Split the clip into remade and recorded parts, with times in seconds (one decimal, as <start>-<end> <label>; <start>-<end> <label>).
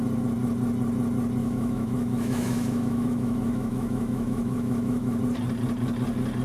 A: 0.0-1.4 recorded; 1.4-5.2 remade; 5.2-6.4 recorded